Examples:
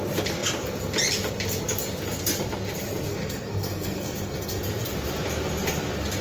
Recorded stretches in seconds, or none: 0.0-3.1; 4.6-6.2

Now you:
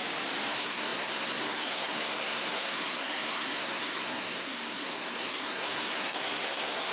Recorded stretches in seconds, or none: 0.0-0.5

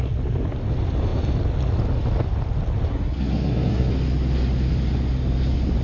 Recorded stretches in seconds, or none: 0.0-2.9; 3.9-5.8

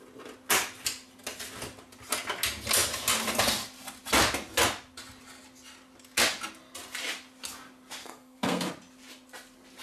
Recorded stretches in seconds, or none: 0.0-8.0; 8.7-9.8

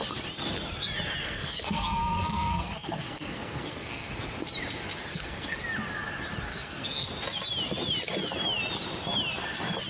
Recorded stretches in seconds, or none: 0.0-1.2; 4.1-5.1; 5.6-6.5; 7.1-9.9

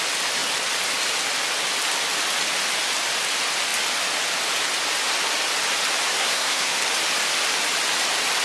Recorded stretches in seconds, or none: 0.0-6.2; 6.8-8.4